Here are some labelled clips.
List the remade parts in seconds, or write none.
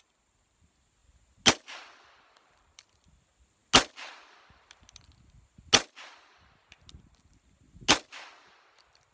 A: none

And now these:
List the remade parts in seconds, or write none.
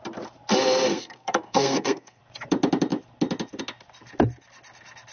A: 0.9-2.2 (codec, SNAC)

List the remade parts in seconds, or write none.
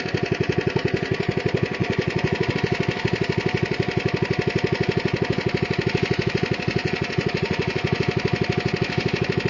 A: 1.8-2.5 (vocoder, Vocos); 6.8-8.0